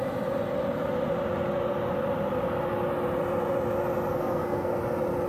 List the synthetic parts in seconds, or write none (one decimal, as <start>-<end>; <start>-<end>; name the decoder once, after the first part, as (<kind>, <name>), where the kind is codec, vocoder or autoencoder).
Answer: 4.1-4.8 (codec, SNAC)